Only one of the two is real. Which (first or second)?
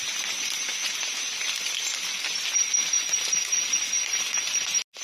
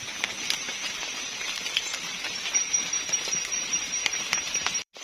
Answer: first